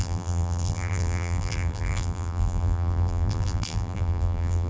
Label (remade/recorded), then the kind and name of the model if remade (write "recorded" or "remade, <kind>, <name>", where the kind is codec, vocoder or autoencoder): remade, vocoder, BigVGAN v2